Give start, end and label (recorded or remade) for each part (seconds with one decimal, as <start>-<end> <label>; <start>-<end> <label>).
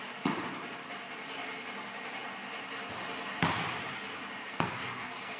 0.0-4.4 recorded; 4.4-5.4 remade